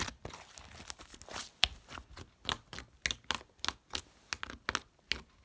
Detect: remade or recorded recorded